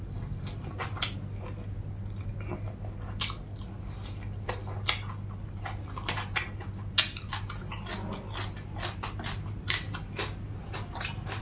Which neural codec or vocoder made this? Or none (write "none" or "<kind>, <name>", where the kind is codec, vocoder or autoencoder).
none